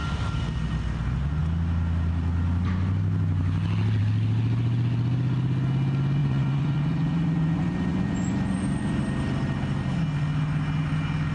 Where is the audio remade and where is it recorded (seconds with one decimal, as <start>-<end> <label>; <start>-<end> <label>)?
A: 0.0-6.2 recorded; 6.2-9.0 remade; 9.0-11.3 recorded